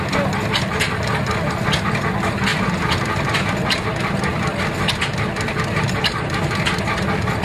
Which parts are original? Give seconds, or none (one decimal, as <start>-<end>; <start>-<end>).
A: 0.0-7.4